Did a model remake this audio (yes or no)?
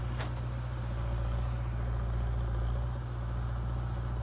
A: no